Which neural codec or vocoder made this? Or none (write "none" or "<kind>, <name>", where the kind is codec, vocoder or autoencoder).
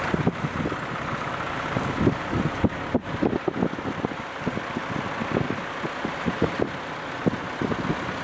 none